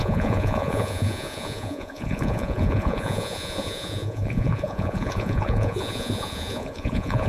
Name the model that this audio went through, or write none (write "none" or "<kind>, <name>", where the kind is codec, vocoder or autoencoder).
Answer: vocoder, Vocos